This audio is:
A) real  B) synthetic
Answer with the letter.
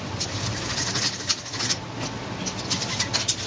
A